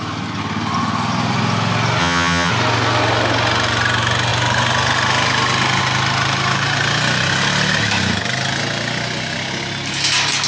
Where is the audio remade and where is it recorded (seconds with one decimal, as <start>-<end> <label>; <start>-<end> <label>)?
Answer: 0.0-2.0 recorded; 2.0-2.5 remade; 2.5-10.5 recorded